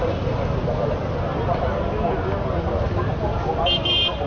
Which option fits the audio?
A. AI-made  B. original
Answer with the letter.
B